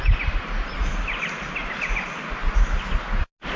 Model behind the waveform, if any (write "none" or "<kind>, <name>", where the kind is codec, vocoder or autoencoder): none